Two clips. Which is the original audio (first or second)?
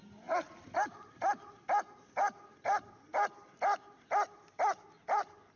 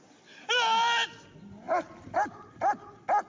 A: second